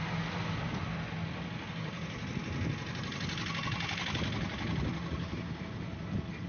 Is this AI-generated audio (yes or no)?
no